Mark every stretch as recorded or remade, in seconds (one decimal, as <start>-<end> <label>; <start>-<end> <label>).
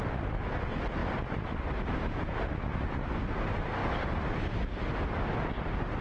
0.0-6.0 recorded